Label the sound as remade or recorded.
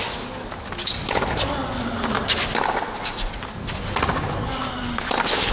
recorded